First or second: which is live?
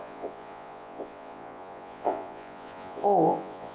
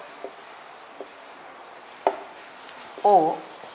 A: second